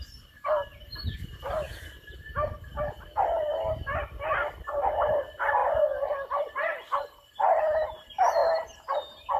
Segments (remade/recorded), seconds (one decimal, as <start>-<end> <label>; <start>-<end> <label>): 0.0-9.4 recorded